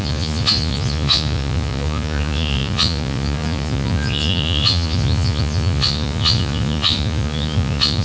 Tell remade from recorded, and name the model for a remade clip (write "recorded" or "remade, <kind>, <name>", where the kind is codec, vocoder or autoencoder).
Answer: remade, vocoder, Vocos